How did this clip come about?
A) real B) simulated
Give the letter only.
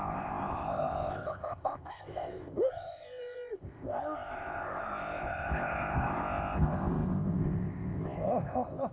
B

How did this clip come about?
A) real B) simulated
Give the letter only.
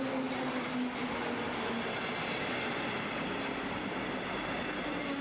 A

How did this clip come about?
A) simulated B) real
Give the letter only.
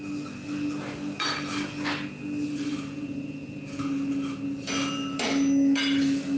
B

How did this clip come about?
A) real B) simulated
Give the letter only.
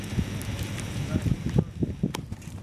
B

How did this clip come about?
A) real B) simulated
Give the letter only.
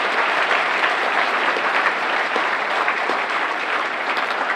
B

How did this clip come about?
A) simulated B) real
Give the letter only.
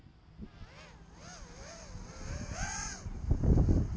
B